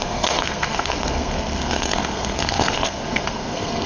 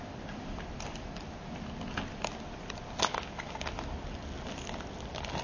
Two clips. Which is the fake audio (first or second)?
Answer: first